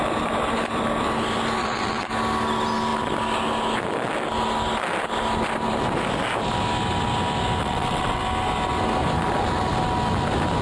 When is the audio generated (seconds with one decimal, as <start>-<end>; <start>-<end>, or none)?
1.6-2.1; 7.6-8.2